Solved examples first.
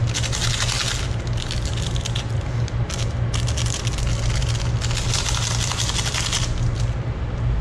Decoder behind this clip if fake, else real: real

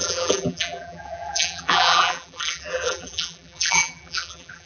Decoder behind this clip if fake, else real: fake, vocoder, BigVGAN v2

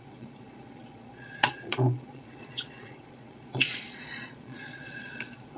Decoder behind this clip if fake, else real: fake, vocoder, Vocos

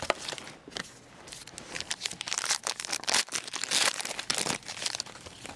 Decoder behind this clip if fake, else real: real